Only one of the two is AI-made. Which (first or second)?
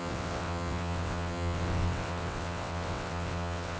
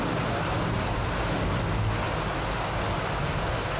first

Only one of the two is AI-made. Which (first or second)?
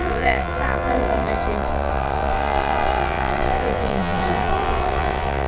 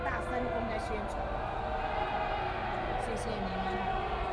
first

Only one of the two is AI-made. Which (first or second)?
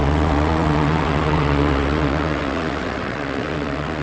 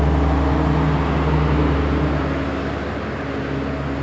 first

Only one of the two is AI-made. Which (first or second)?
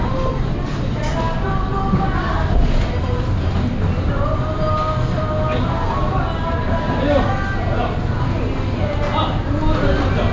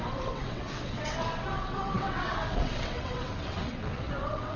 second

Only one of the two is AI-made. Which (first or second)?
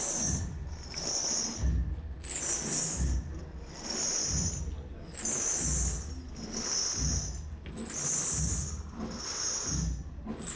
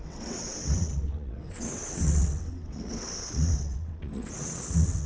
second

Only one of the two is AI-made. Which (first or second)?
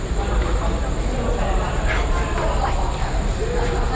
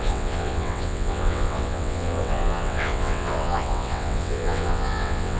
second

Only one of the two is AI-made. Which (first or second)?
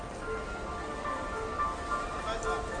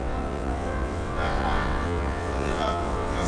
second